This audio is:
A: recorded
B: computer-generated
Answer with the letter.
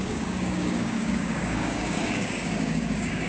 B